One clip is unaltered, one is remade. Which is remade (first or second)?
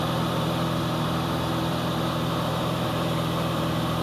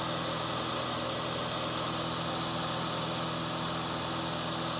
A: first